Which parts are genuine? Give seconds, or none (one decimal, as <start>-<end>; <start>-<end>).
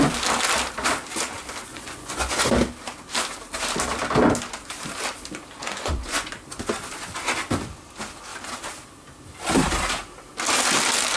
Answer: 0.0-1.7; 2.5-5.6; 6.3-11.2